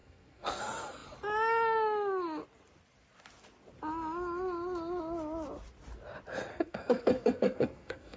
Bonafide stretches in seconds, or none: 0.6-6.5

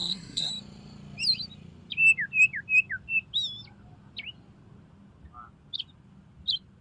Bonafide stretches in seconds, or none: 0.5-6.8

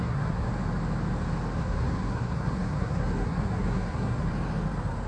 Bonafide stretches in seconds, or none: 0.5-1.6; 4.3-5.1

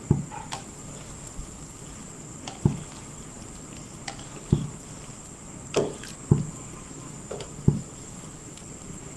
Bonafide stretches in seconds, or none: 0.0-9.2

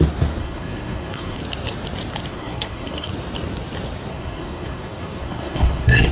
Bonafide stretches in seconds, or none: 0.0-0.4; 1.4-2.3; 3.1-4.1